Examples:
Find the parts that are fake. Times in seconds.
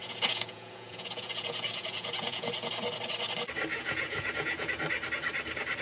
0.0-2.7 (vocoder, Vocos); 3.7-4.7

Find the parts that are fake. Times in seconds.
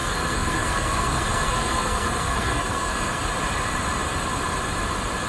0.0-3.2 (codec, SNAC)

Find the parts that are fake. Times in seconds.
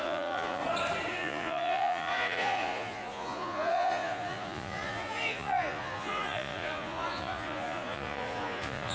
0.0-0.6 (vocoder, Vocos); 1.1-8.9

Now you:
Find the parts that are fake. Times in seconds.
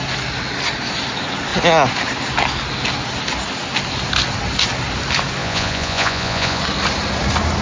5.4-6.6 (vocoder, Vocos)